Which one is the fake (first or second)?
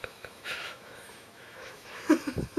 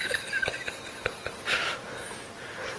first